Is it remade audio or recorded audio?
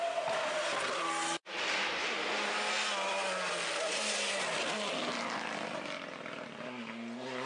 recorded